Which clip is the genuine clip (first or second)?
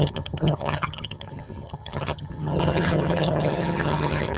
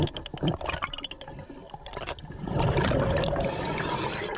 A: second